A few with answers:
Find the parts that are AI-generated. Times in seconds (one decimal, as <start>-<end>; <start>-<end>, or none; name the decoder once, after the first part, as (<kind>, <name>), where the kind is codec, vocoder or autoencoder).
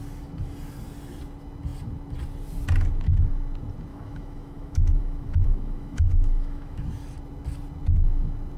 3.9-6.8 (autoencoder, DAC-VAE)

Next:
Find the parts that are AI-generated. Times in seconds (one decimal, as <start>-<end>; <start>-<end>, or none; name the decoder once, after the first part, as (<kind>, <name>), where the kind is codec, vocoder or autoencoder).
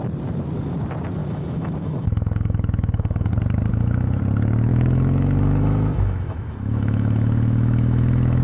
1.2-3.3 (autoencoder, DAC-VAE); 3.7-4.2; 4.7-8.4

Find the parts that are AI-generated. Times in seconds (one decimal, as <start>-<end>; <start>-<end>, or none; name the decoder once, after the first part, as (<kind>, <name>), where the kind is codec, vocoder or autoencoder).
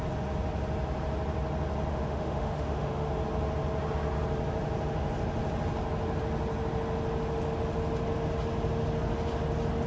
1.9-3.1 (autoencoder, DAC-VAE)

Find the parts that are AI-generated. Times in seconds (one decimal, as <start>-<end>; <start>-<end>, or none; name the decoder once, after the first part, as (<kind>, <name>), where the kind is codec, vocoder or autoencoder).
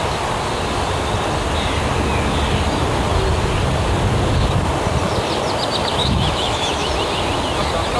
6.0-6.9 (autoencoder, DAC-VAE)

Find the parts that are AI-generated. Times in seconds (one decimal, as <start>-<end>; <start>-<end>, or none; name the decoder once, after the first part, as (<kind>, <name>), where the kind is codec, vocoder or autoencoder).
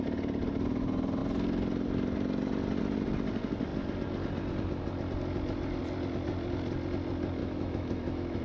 7.4-8.4 (autoencoder, DAC-VAE)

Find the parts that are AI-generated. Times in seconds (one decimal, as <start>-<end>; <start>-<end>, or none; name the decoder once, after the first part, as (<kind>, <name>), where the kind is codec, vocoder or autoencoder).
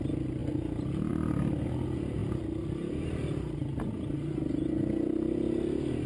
none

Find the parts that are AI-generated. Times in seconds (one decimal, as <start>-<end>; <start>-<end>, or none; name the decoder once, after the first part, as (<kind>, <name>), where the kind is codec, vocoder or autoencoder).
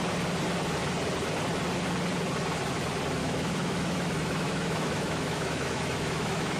3.2-6.6 (autoencoder, DAC-VAE)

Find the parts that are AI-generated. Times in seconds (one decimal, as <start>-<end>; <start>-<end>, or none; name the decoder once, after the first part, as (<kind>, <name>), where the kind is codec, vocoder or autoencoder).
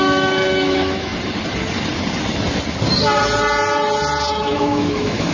0.0-1.1 (autoencoder, DAC-VAE); 4.3-5.3